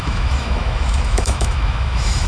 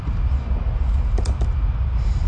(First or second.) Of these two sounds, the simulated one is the first